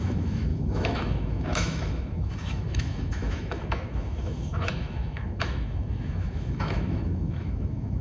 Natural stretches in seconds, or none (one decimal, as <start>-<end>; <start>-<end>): none